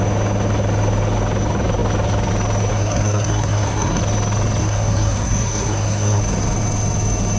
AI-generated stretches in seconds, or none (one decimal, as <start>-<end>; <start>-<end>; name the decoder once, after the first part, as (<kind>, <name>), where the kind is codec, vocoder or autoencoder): 2.7-4.0 (codec, SNAC); 4.6-6.2